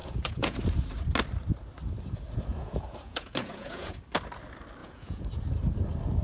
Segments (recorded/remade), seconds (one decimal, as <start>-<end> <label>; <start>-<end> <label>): 0.0-0.6 remade; 0.6-2.5 recorded; 2.5-4.0 remade; 4.0-4.8 recorded; 4.8-5.3 remade; 5.3-6.2 recorded